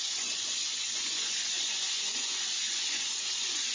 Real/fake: fake